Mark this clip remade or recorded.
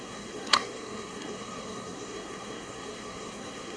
remade